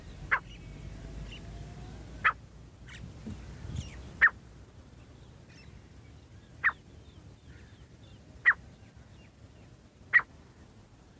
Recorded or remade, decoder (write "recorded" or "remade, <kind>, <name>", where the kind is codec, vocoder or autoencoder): recorded